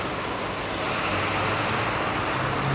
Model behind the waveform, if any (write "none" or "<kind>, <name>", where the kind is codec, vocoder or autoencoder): none